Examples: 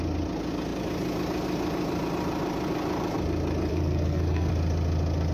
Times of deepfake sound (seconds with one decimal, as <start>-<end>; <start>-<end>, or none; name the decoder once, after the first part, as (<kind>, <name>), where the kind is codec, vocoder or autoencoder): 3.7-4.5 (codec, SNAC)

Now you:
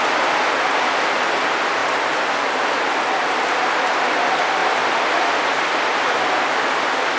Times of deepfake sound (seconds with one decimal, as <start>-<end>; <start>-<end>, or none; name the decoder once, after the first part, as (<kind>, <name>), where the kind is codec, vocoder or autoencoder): none

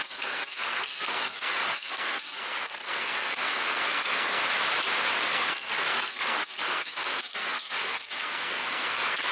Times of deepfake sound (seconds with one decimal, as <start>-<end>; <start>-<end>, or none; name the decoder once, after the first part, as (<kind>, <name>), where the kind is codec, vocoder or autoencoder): 0.0-4.4 (codec, SNAC); 5.2-9.3

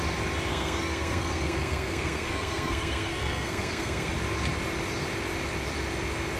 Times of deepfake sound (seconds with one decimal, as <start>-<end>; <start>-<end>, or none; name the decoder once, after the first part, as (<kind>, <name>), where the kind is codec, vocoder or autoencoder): 0.5-4.1 (codec, SNAC)

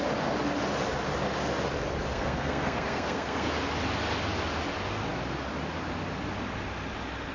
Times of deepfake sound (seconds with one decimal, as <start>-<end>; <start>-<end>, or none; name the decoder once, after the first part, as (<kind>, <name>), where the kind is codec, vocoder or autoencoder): 2.1-3.5 (codec, SNAC)